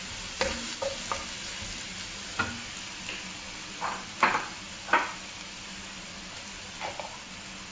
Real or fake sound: real